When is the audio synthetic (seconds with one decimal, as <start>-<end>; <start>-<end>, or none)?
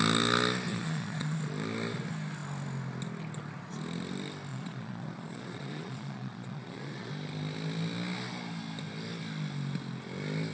0.7-1.4; 4.5-7.1